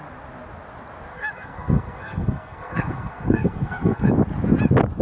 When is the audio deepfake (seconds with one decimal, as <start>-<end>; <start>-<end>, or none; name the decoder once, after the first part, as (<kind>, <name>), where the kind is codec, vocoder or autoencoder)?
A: 1.1-4.1 (codec, SNAC)